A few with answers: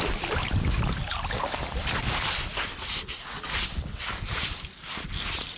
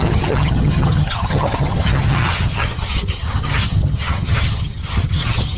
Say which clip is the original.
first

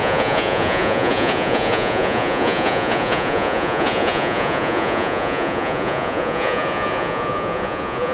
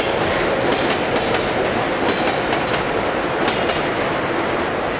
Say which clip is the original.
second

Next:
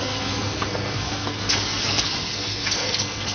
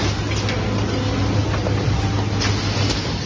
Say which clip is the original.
second